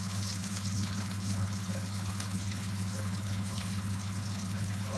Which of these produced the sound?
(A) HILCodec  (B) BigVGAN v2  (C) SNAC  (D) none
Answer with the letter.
A